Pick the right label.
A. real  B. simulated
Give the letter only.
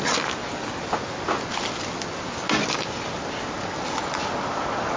A